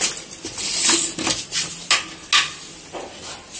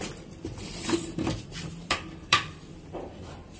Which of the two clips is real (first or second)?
first